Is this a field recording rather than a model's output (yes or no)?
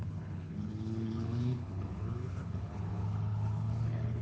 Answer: no